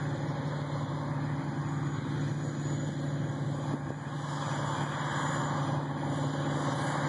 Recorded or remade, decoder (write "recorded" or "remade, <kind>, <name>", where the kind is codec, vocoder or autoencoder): recorded